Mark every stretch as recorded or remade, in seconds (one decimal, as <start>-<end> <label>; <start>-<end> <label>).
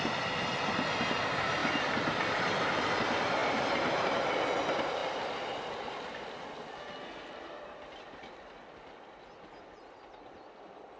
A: 0.0-1.6 recorded; 1.6-2.7 remade; 2.7-3.4 recorded; 3.4-4.3 remade; 4.3-11.0 recorded